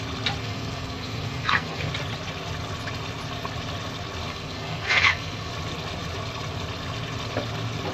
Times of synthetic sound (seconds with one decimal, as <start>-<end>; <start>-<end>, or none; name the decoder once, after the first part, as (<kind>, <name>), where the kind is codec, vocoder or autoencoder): 0.4-1.9 (codec, SNAC); 4.3-5.5